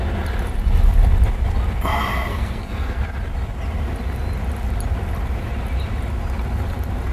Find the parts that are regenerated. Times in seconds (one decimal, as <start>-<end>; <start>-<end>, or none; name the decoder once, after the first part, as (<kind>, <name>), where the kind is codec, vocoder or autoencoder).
2.3-3.0 (codec, SNAC)